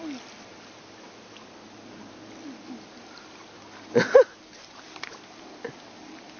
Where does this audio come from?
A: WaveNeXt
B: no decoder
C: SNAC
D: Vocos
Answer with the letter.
B